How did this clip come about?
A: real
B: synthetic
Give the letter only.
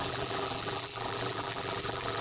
B